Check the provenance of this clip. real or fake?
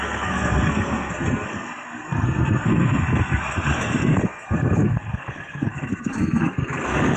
fake